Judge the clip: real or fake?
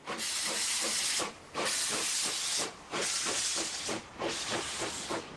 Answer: fake